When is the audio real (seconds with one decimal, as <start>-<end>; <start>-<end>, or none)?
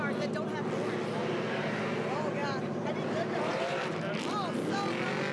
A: 0.0-1.2; 1.8-2.4; 4.2-5.3